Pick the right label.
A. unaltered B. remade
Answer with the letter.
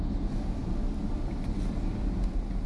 B